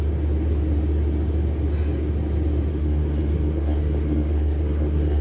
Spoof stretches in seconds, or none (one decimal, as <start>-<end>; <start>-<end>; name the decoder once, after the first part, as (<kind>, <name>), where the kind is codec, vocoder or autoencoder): 2.7-5.2 (codec, SNAC)

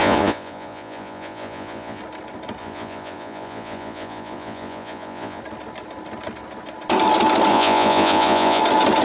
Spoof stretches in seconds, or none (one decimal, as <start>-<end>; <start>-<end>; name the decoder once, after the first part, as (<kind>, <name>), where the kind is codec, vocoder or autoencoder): 0.0-2.0 (vocoder, Vocos); 2.6-5.4; 7.5-8.6

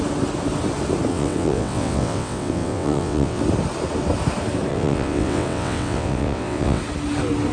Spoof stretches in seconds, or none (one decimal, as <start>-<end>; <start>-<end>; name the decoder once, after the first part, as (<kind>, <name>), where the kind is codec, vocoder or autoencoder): 1.1-3.4 (vocoder, WaveNeXt); 4.7-6.8

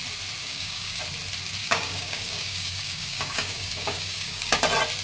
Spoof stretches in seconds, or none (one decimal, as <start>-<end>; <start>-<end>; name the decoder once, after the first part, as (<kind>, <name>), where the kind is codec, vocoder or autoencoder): 0.4-1.0 (codec, DAC); 1.6-4.6

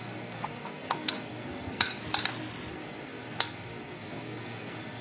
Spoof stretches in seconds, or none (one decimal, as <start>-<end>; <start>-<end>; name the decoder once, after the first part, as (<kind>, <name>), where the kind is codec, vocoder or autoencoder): 0.0-2.0 (codec, SNAC); 2.7-5.0

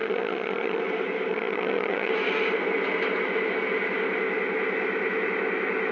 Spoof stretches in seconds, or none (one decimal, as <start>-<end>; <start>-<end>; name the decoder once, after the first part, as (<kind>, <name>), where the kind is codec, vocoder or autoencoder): 0.0-0.8 (vocoder, HiFi-GAN); 1.3-2.1

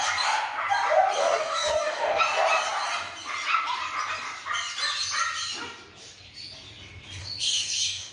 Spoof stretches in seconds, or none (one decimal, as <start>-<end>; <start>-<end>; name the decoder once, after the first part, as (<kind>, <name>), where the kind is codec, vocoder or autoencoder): 1.2-2.2 (codec, DAC); 7.2-8.1